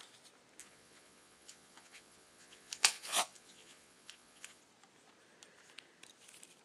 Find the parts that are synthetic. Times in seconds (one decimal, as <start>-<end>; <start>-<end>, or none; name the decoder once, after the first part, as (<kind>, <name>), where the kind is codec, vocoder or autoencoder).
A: 0.6-4.6 (vocoder, Vocos)